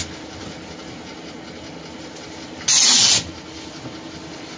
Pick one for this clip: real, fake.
real